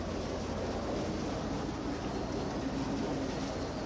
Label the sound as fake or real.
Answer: real